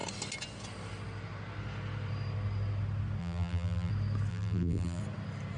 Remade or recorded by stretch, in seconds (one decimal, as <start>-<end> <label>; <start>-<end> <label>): 0.0-3.2 recorded; 3.2-3.9 remade; 3.9-4.3 recorded; 4.3-5.0 remade; 5.0-5.6 recorded